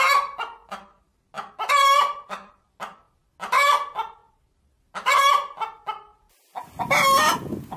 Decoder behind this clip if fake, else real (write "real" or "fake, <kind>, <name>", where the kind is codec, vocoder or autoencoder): real